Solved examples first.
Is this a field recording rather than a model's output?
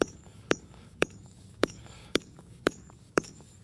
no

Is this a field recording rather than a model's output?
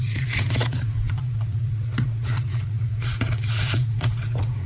no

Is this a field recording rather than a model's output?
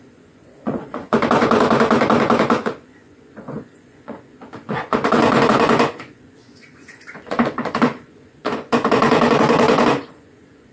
no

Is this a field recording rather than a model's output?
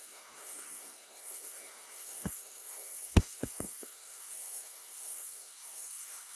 no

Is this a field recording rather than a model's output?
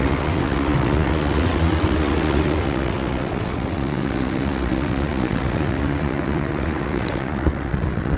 no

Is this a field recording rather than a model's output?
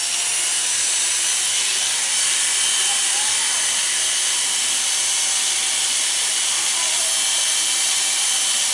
yes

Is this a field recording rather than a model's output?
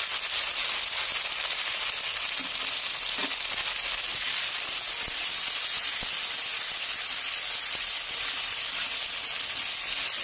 yes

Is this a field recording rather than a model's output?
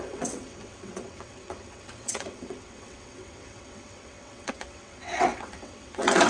no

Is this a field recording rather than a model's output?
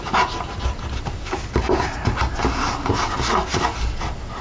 yes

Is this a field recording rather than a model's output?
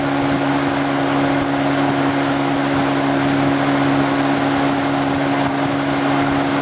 yes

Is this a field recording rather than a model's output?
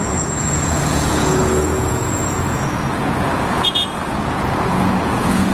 no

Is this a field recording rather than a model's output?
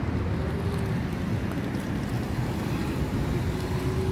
yes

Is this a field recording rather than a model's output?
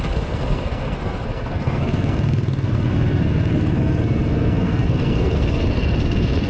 no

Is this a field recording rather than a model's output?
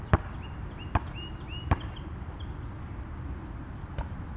yes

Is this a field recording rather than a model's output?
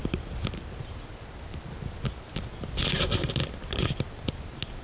yes